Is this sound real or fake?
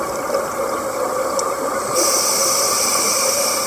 real